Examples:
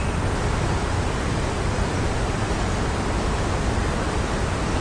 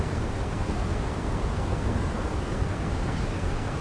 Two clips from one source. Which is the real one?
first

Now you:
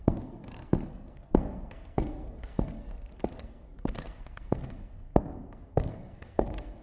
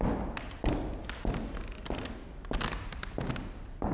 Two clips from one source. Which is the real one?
second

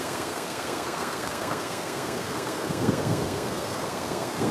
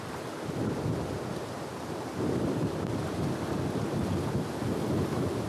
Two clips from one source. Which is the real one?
second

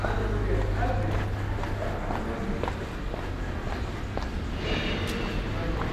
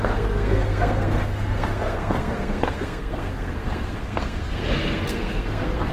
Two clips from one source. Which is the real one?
first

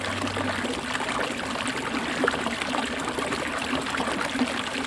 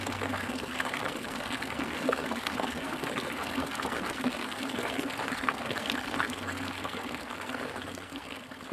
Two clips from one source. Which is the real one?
first